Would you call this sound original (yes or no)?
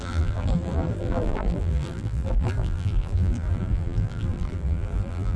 no